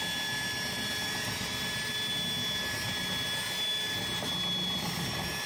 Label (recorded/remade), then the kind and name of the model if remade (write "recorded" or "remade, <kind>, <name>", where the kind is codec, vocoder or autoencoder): recorded